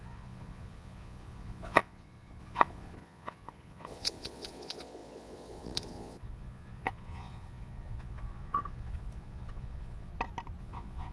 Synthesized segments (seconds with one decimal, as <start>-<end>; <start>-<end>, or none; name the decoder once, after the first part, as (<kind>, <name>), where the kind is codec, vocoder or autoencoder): 0.0-10.1 (vocoder, Vocos); 10.6-11.1